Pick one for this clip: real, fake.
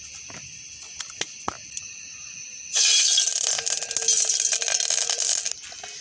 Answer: real